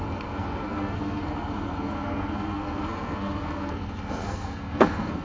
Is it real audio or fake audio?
fake